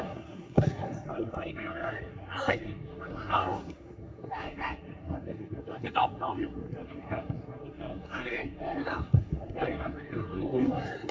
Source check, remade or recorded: remade